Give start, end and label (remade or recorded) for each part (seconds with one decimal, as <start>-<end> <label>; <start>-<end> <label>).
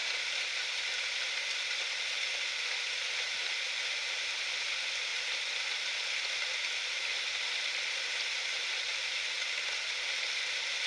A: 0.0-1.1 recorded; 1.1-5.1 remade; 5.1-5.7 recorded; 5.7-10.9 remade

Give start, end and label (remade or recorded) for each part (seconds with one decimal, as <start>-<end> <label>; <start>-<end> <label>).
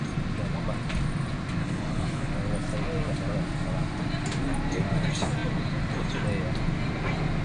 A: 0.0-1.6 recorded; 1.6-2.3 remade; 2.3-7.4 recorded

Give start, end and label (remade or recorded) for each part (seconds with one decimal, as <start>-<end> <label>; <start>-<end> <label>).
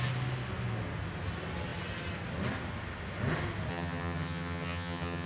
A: 0.0-3.7 recorded; 3.7-5.3 remade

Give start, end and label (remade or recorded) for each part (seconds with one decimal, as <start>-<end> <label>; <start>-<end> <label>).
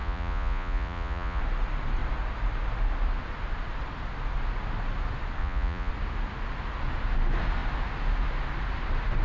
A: 0.0-1.4 remade; 1.4-5.4 recorded; 5.4-5.9 remade; 5.9-9.2 recorded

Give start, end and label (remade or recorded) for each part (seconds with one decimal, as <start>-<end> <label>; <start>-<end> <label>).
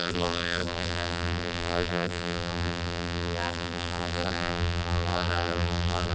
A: 0.0-6.1 remade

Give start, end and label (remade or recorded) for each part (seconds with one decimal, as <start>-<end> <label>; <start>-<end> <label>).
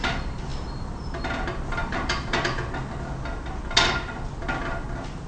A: 0.0-5.3 recorded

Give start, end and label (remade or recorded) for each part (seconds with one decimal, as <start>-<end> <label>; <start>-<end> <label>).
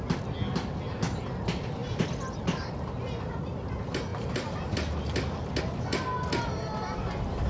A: 0.0-1.8 recorded; 1.8-2.4 remade; 2.4-7.5 recorded